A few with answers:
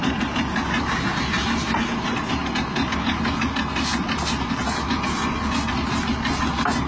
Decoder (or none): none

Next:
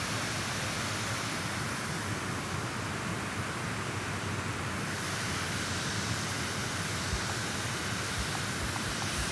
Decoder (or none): none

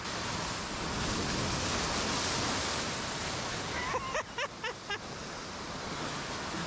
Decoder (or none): none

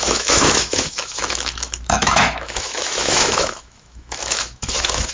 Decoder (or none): autoencoder, DAC-VAE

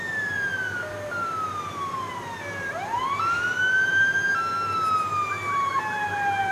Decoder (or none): none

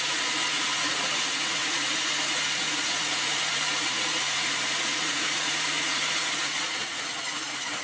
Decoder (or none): vocoder, Vocos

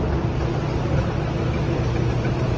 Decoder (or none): none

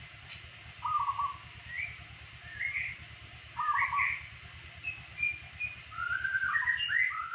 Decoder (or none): none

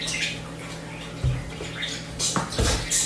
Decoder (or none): none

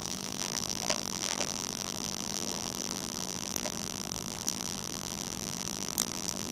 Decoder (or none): vocoder, BigVGAN v2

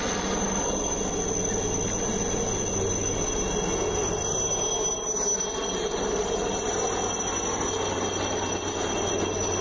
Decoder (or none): none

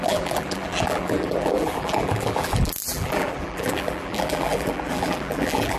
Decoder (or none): vocoder, BigVGAN v2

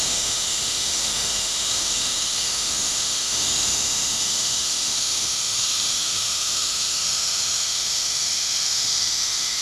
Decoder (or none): autoencoder, DAC-VAE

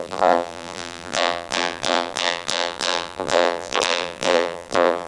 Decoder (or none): vocoder, BigVGAN v2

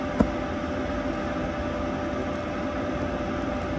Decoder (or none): none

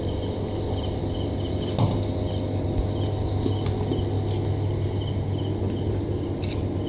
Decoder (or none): none